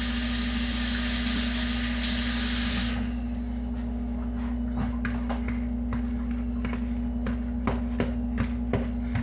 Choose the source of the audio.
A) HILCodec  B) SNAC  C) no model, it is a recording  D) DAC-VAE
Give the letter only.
C